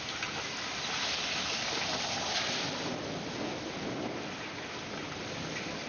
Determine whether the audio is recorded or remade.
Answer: recorded